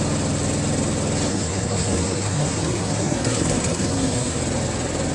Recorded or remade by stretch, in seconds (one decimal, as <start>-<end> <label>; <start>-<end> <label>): 0.0-1.3 recorded; 1.3-4.4 remade; 4.4-5.1 recorded